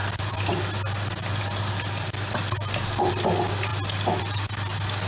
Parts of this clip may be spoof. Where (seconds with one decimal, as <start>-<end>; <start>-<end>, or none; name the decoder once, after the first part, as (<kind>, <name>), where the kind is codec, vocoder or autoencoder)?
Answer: none